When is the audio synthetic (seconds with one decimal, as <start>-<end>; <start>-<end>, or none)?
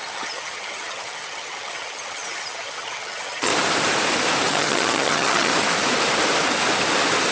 0.0-3.5; 4.5-5.5